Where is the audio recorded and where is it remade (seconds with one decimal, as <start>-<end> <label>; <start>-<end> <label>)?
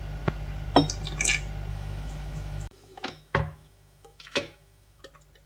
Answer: 0.0-1.7 recorded; 1.7-5.0 remade; 5.0-5.5 recorded